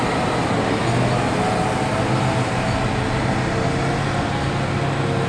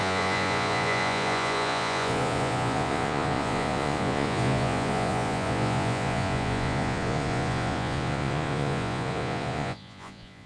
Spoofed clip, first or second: second